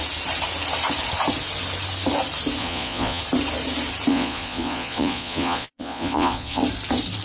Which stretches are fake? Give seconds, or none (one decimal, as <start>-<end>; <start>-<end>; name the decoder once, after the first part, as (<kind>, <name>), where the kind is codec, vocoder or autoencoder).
2.6-3.2 (vocoder, Vocos); 4.1-6.6